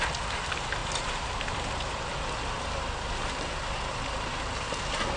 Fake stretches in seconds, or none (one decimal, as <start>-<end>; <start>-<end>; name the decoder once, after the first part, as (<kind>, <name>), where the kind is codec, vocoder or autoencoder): 0.8-2.0 (vocoder, BigVGAN v2)